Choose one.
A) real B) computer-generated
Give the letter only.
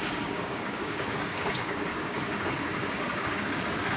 B